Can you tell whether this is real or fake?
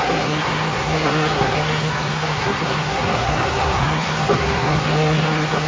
fake